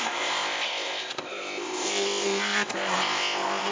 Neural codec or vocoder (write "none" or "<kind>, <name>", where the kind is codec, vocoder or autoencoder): codec, ZipCodec